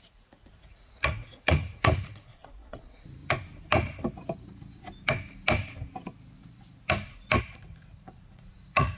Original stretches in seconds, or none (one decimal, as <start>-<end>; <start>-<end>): 3.2-7.4